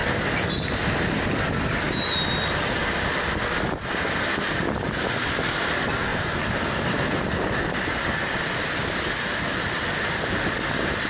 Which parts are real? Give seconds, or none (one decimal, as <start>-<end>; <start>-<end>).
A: 0.0-11.1